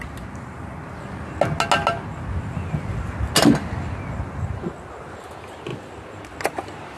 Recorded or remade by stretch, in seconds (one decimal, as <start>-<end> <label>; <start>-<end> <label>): 0.0-7.0 recorded